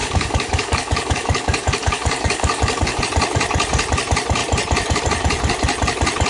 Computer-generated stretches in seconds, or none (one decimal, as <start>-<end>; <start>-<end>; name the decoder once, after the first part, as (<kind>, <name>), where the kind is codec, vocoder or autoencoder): 0.0-3.0 (codec, DAC)